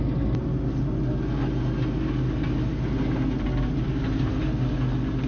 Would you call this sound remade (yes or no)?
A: no